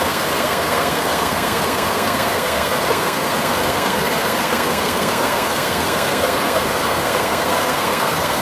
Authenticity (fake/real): fake